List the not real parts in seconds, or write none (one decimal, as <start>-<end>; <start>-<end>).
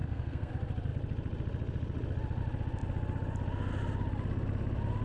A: 0.0-0.5